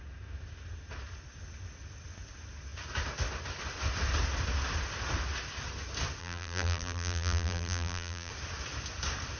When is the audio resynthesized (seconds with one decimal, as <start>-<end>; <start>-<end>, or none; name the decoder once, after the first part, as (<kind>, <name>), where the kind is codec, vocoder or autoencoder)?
6.2-8.3 (vocoder, BigVGAN v2)